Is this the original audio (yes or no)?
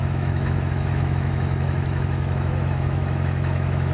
no